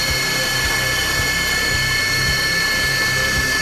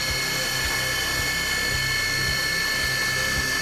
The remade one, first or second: first